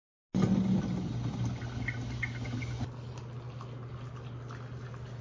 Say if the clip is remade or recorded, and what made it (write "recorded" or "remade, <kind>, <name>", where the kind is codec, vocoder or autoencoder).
recorded